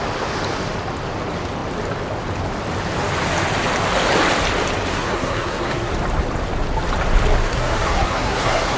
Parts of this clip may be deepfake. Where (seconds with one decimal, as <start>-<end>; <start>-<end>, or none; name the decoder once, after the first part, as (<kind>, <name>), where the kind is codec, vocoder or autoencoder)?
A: 4.9-5.9 (codec, SNAC); 7.5-8.8